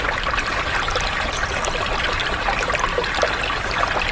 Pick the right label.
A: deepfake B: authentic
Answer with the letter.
B